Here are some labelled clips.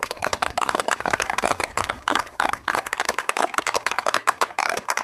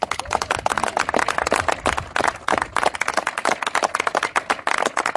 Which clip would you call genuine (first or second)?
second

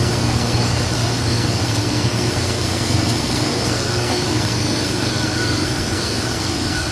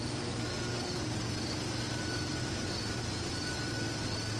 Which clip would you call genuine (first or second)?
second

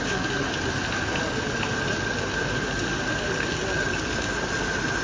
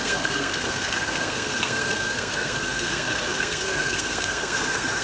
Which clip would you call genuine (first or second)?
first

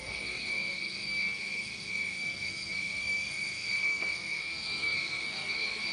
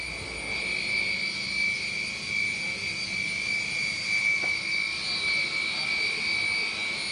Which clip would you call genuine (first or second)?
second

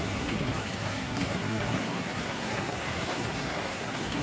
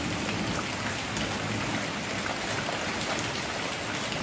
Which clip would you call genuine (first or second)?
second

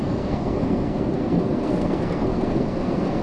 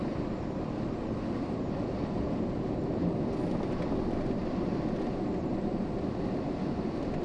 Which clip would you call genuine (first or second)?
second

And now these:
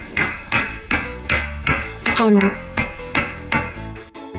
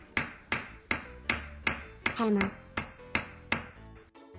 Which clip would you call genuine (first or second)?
second